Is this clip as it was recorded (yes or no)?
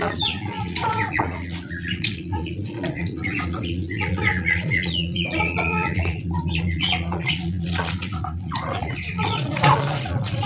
no